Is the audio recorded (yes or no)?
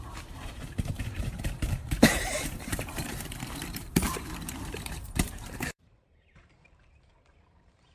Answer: no